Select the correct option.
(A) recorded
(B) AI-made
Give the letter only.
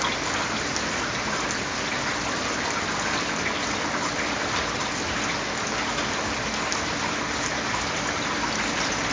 A